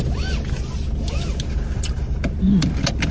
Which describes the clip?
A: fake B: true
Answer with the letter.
B